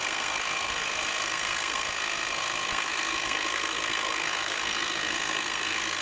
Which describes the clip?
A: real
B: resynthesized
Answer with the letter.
B